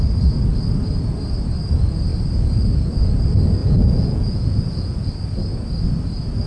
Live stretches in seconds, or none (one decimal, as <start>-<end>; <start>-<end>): 0.0-3.6; 5.1-6.5